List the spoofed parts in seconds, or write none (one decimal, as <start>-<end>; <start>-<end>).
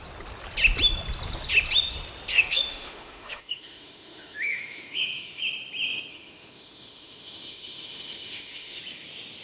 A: 2.3-5.4; 6.1-8.8